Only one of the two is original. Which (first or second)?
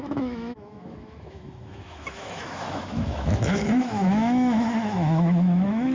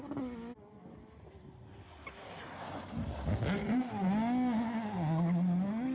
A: second